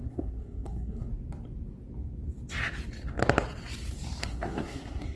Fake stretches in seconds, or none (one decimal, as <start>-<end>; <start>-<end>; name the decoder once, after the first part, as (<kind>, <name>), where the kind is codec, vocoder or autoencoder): 0.0-1.1 (codec, SNAC); 4.2-5.2